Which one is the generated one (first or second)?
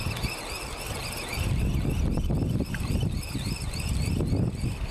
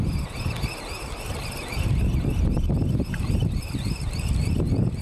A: second